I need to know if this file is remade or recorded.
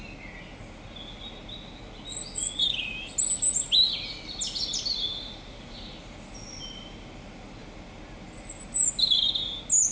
recorded